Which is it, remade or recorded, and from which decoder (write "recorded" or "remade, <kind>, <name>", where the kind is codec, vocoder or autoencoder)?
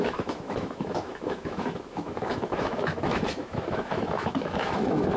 remade, autoencoder, DAC-VAE